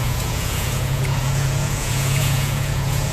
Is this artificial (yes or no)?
yes